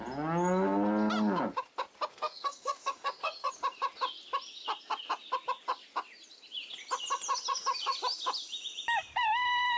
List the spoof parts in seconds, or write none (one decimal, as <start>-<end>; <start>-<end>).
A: 2.1-3.5